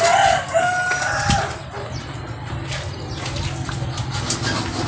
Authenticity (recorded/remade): recorded